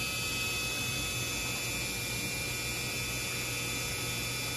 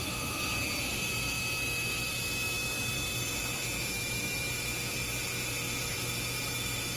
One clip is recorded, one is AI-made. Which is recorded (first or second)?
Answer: first